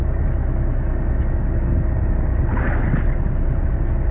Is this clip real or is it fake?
real